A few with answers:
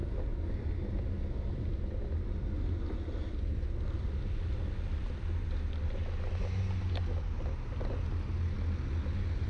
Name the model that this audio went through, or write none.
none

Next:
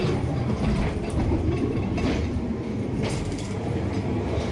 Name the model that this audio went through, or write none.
vocoder, BigVGAN v2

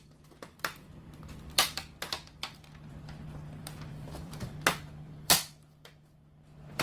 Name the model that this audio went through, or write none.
vocoder, BigVGAN v2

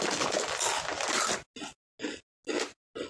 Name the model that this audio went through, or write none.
none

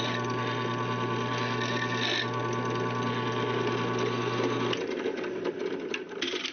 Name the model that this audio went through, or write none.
none